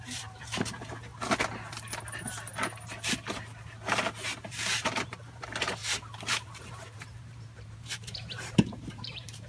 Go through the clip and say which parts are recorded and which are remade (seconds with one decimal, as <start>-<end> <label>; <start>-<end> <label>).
0.0-1.1 remade; 1.1-4.5 recorded; 4.5-5.8 remade; 5.8-6.3 recorded; 6.3-9.5 remade